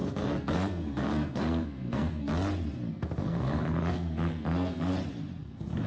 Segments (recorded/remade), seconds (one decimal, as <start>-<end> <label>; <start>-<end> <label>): 0.0-2.3 remade; 2.3-2.9 recorded; 2.9-4.9 remade; 4.9-5.4 recorded; 5.4-5.9 remade

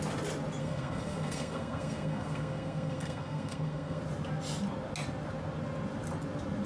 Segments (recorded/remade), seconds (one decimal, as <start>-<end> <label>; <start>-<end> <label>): 0.0-0.6 recorded; 0.6-4.0 remade; 4.0-6.7 recorded